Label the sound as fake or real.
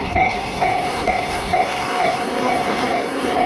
fake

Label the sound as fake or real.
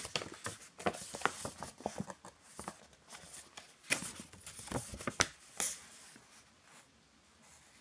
real